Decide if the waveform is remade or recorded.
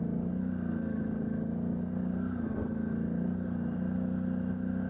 recorded